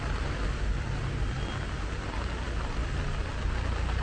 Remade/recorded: recorded